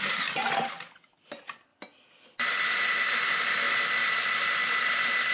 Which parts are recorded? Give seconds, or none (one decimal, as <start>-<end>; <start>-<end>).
0.0-5.3